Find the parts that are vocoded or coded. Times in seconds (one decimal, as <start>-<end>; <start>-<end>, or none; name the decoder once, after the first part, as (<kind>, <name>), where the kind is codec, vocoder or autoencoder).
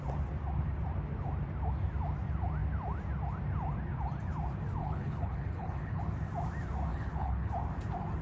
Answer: 4.8-6.0 (codec, HILCodec); 6.9-7.5